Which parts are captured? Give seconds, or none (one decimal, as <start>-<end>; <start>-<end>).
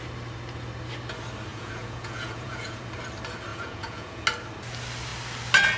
0.0-1.5; 2.8-3.5; 4.2-5.8